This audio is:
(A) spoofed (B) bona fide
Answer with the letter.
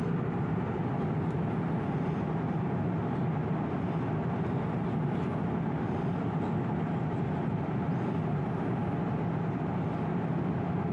B